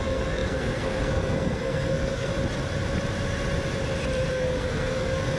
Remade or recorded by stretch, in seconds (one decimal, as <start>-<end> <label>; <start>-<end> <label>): 0.0-2.3 remade; 2.3-4.3 recorded; 4.3-5.4 remade